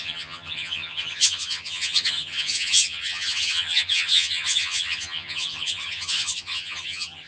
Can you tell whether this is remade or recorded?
remade